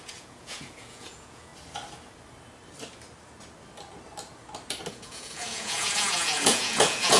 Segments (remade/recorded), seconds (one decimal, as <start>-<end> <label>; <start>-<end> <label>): 0.0-1.5 remade; 1.5-4.9 recorded; 4.9-7.2 remade